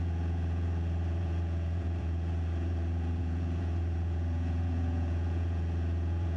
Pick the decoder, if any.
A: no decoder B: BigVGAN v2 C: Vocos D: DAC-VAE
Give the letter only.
C